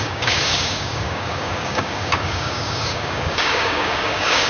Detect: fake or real fake